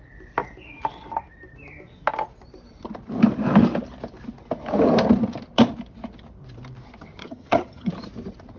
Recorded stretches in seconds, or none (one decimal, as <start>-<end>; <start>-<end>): 0.0-7.2; 7.9-8.6